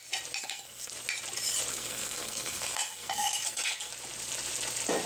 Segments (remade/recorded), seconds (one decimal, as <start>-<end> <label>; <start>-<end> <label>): 0.0-0.4 recorded; 0.4-0.9 remade; 0.9-1.7 recorded; 1.7-3.9 remade; 3.9-5.1 recorded